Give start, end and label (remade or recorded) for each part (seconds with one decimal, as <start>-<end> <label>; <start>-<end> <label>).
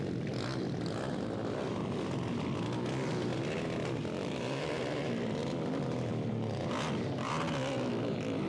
0.0-8.5 recorded